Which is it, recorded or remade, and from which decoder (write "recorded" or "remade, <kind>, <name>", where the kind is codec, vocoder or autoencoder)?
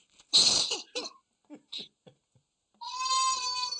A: recorded